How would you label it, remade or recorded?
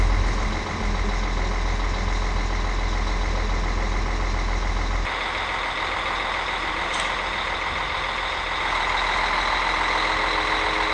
recorded